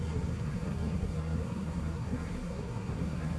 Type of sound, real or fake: fake